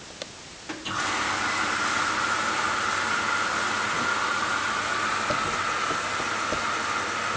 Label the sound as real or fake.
real